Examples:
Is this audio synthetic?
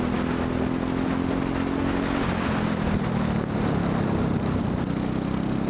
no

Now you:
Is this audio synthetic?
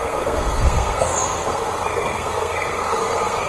yes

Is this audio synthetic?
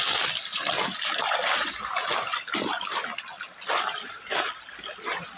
no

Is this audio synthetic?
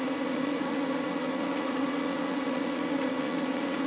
yes